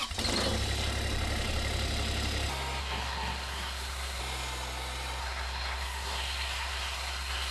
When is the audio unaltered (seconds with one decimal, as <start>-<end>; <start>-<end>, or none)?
0.0-2.8; 4.2-5.2